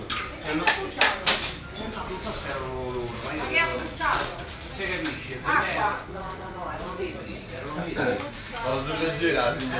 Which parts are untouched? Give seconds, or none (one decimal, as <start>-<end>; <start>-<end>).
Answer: 0.0-3.7; 4.7-5.4; 7.7-9.8